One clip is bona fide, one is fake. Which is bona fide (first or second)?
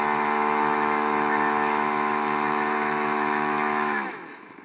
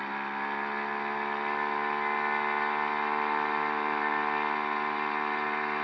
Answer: second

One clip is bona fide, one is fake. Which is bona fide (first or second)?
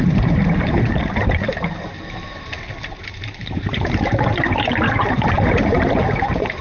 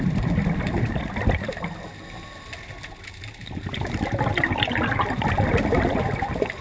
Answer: second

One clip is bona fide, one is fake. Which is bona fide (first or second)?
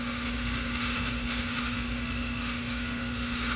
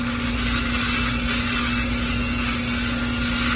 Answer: second